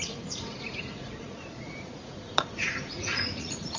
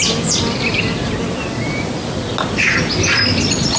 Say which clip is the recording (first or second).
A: second